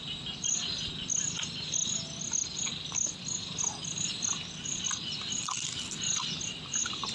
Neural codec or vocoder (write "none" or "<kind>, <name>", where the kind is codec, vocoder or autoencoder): none